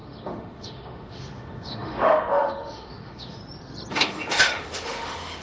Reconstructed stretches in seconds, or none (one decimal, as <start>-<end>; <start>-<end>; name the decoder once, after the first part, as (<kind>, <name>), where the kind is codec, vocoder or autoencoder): 0.0-3.4 (autoencoder, DAC-VAE); 3.9-5.4